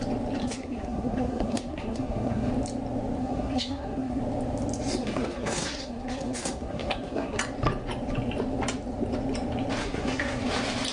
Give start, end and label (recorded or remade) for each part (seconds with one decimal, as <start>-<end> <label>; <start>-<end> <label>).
0.0-0.4 recorded; 0.4-2.5 remade; 2.5-3.2 recorded; 3.2-4.2 remade; 4.2-5.0 recorded; 5.0-7.4 remade; 7.4-9.8 recorded; 9.8-10.4 remade; 10.4-10.9 recorded